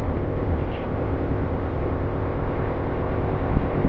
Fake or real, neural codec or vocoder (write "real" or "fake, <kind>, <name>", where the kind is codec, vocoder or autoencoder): fake, codec, ZipCodec